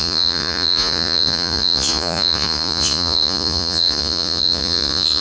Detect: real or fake fake